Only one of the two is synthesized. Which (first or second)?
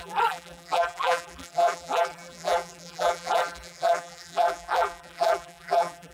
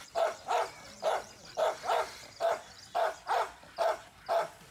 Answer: first